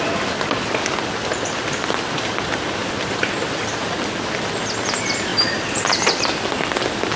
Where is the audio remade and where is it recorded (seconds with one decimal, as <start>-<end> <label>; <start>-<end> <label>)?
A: 0.0-7.2 recorded